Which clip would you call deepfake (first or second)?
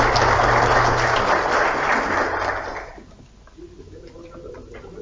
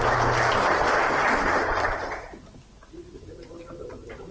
second